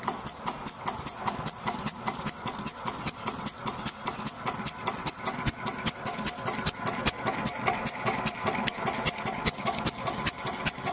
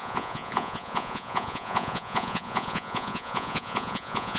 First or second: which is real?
first